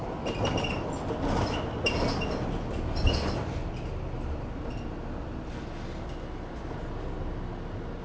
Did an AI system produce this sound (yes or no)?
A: no